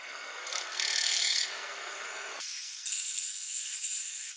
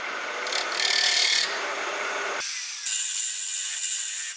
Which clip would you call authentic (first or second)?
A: second